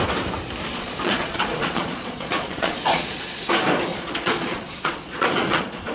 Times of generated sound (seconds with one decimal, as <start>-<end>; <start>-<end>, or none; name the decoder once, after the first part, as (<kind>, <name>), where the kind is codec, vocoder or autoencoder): 0.7-3.4 (vocoder, Vocos); 3.9-5.9